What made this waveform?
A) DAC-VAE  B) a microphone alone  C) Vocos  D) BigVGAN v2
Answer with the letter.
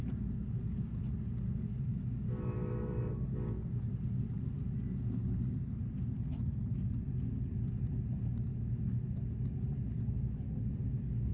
B